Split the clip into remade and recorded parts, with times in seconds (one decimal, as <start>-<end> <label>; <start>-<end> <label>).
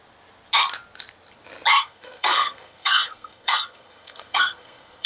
0.0-1.7 recorded; 1.7-5.1 remade